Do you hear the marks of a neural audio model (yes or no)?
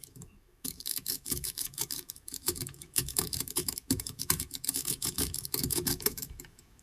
yes